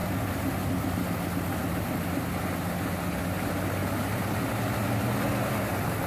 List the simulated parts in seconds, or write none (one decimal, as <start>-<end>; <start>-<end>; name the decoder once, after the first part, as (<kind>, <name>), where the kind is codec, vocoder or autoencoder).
none